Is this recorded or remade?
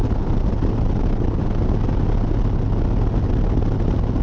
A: recorded